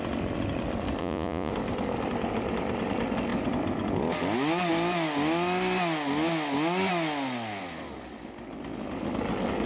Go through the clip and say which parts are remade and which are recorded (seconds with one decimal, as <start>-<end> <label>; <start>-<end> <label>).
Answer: 0.0-1.0 recorded; 1.0-1.5 remade; 1.5-9.7 recorded